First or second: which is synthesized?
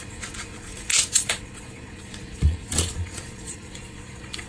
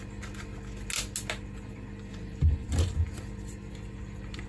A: first